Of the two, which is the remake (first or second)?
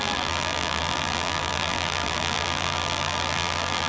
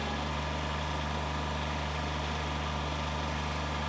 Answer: first